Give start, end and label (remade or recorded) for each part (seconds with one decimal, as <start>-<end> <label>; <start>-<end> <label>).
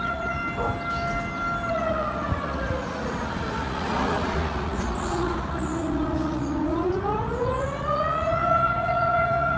0.0-0.4 remade; 0.4-1.7 recorded; 1.7-9.6 remade